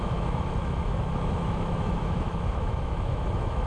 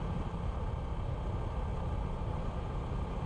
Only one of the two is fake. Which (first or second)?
first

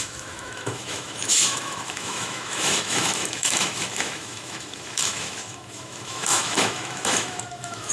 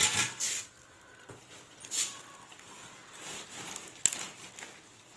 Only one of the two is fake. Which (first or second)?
first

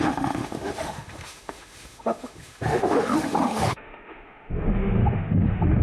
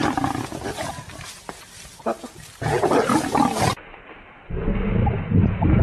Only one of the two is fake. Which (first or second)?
first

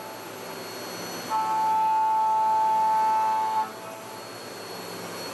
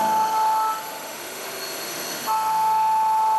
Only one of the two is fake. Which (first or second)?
second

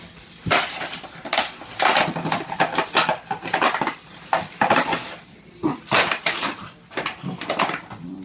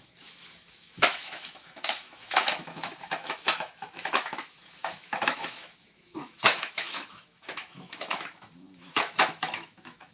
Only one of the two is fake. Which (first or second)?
second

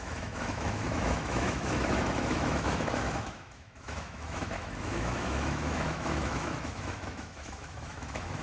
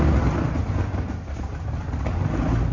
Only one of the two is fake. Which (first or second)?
first